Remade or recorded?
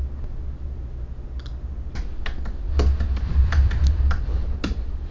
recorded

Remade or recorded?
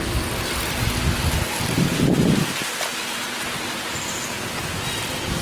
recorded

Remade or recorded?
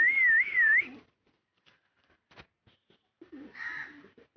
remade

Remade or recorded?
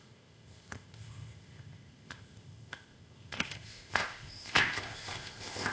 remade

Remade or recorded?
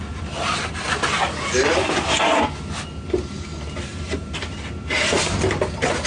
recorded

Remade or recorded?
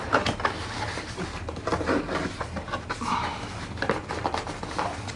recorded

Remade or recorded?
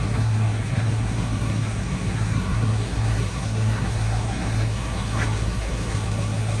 remade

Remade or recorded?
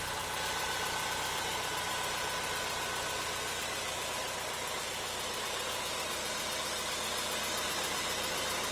recorded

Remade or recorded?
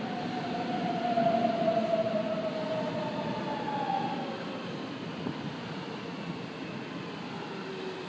recorded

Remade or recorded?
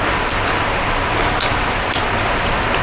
recorded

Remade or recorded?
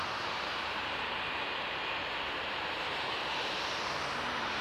remade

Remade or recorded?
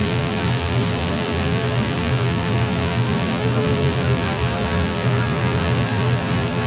remade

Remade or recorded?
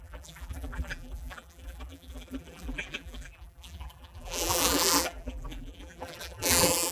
remade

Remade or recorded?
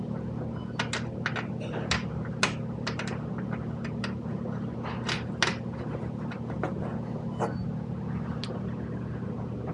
recorded